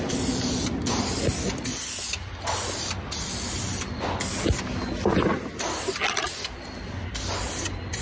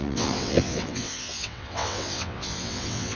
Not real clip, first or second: second